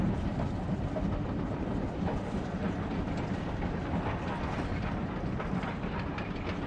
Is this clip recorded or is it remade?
recorded